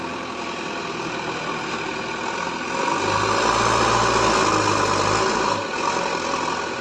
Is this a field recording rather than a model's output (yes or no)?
yes